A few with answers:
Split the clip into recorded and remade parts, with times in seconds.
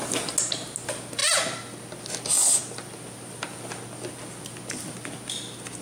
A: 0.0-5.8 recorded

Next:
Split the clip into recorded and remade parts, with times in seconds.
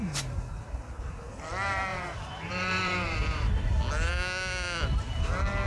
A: 0.0-1.9 recorded; 1.9-3.7 remade; 3.7-5.7 recorded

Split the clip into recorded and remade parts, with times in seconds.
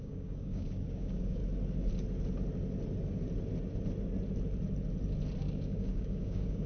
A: 0.0-1.4 remade; 1.4-5.4 recorded; 5.4-6.7 remade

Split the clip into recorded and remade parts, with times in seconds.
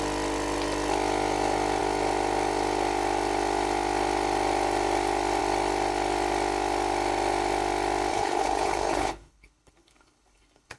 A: 0.0-8.1 recorded; 8.1-10.8 remade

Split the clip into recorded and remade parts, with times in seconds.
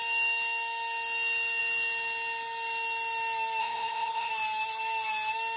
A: 0.0-3.6 recorded; 3.6-4.3 remade; 4.3-5.6 recorded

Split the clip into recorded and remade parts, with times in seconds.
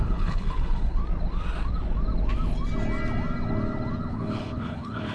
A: 0.0-1.0 remade; 1.0-4.1 recorded; 4.1-5.1 remade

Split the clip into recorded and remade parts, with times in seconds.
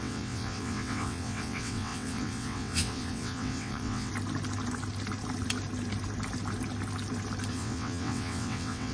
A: 0.0-4.1 remade; 4.1-7.5 recorded; 7.5-8.9 remade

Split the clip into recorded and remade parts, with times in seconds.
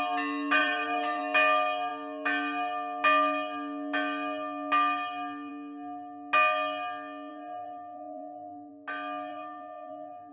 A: 0.0-0.6 recorded; 0.6-1.2 remade; 1.2-7.3 recorded; 7.3-8.7 remade; 8.7-9.3 recorded; 9.3-10.3 remade